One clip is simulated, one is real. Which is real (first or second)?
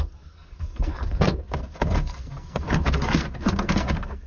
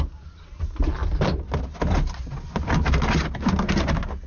second